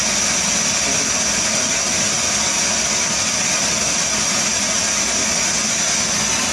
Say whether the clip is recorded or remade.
recorded